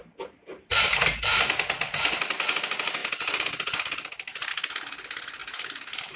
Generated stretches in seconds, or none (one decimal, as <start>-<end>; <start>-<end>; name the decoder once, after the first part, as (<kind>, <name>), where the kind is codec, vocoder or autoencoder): 0.5-1.4 (vocoder, BigVGAN v2); 5.4-6.2